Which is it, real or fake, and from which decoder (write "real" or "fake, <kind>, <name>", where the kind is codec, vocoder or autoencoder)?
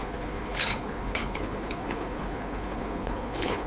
fake, codec, HILCodec